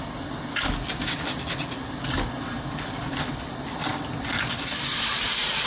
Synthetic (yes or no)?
no